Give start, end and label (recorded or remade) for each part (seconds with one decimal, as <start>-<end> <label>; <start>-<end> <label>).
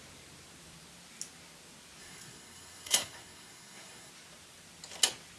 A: 0.0-2.0 recorded; 2.0-4.1 remade; 4.1-5.4 recorded